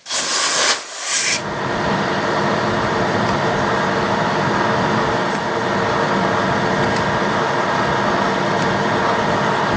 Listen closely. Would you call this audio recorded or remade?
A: recorded